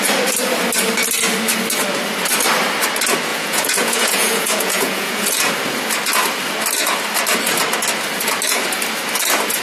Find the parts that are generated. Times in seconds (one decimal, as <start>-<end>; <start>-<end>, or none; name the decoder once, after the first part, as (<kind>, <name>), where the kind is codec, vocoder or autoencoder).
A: 3.3-5.5 (vocoder, Vocos)